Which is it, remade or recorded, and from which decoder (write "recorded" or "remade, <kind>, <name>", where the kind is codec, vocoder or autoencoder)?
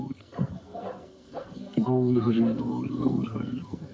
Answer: remade, codec, SNAC